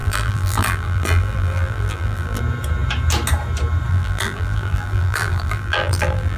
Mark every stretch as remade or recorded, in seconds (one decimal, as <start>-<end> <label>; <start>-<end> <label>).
0.0-2.4 remade; 2.4-3.9 recorded; 3.9-6.4 remade